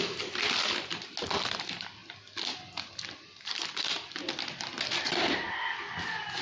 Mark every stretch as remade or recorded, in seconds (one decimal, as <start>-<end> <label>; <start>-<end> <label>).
0.0-6.4 recorded